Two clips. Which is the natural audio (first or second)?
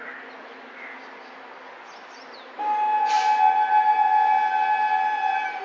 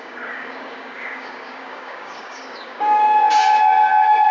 first